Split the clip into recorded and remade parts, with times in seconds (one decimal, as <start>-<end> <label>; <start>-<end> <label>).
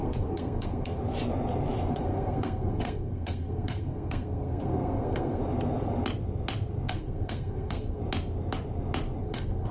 0.0-1.0 remade; 1.0-1.9 recorded; 1.9-5.4 remade; 5.4-6.9 recorded; 6.9-8.0 remade; 8.0-9.2 recorded; 9.2-9.7 remade